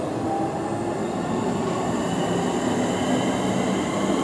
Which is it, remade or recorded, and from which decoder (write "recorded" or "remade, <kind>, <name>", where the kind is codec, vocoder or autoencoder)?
recorded